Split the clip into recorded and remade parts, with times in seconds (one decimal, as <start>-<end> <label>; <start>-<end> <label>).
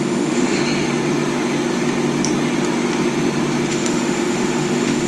0.0-0.6 remade; 0.6-3.7 recorded; 3.7-5.1 remade